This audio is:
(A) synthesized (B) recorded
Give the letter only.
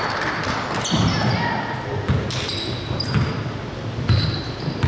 B